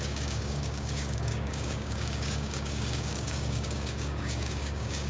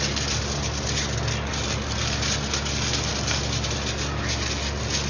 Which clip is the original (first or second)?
second